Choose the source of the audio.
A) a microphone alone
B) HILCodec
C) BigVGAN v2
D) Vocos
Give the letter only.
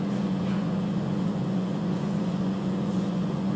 D